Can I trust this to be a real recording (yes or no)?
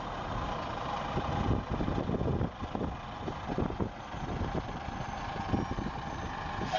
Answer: yes